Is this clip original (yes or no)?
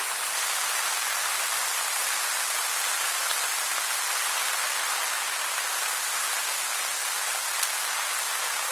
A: yes